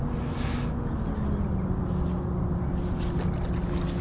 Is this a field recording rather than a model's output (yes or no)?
yes